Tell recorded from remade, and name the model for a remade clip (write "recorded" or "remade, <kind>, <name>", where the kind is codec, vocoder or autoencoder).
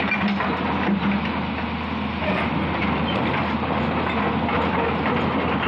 recorded